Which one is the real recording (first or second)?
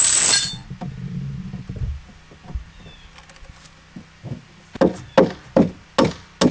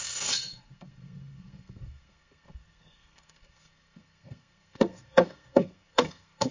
first